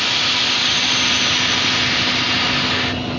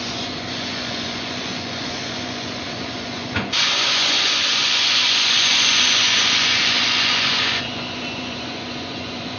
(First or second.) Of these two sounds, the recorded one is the first